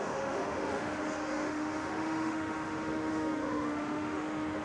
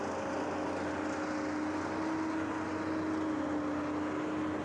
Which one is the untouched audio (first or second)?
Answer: second